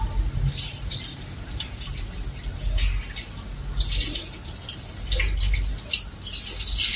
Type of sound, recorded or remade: recorded